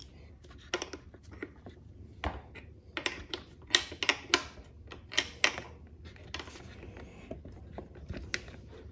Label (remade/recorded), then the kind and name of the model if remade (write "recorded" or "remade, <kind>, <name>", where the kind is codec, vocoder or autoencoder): recorded